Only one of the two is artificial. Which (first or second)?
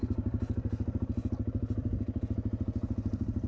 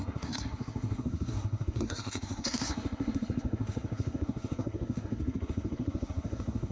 second